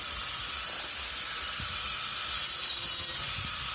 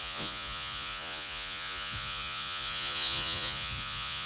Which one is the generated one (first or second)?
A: second